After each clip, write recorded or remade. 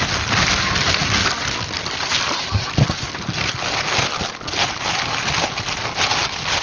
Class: recorded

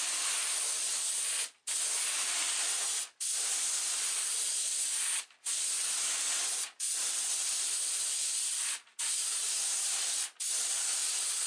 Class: recorded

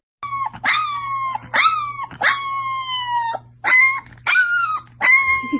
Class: recorded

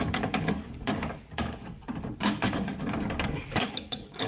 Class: remade